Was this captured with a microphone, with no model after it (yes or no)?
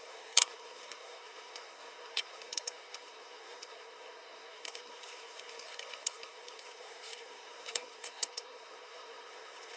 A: no